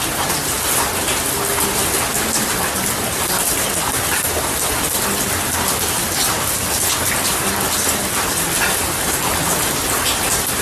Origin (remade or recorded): recorded